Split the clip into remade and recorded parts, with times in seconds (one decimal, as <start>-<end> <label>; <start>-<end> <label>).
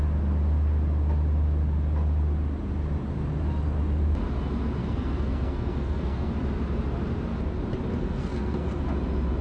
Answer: 0.0-4.8 recorded; 4.8-6.3 remade; 6.3-7.9 recorded; 7.9-8.8 remade; 8.8-9.4 recorded